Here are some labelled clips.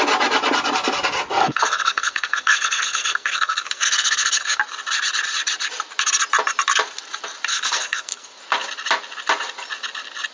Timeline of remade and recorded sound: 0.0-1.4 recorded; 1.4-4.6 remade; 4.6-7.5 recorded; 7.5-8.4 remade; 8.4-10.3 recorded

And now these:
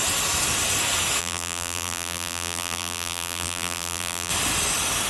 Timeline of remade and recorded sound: 0.0-1.2 recorded; 1.2-4.3 remade; 4.3-5.1 recorded

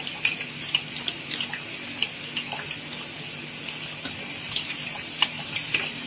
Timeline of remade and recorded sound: 0.0-0.8 remade; 0.8-4.5 recorded; 4.5-6.1 remade

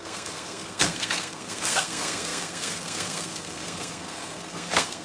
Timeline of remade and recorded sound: 0.0-5.0 remade

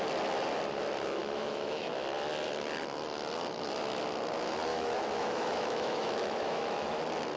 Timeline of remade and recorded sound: 0.0-1.2 recorded; 1.2-1.9 remade; 1.9-4.7 recorded; 4.7-7.0 remade; 7.0-7.4 recorded

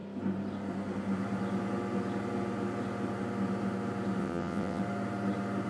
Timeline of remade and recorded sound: 0.0-4.2 recorded; 4.2-4.8 remade; 4.8-5.7 recorded

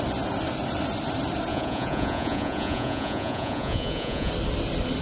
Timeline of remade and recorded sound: 0.0-1.5 recorded; 1.5-4.3 remade; 4.3-5.0 recorded

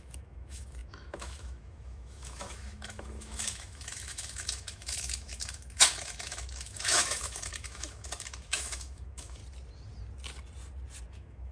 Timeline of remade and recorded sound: 0.0-9.4 remade; 9.4-11.1 recorded; 11.1-11.5 remade